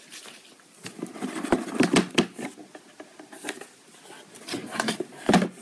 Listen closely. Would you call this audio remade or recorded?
recorded